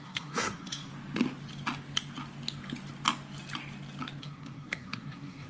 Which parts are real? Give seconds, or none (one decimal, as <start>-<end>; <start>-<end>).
0.9-4.2